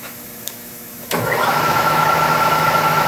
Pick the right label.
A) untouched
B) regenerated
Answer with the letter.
B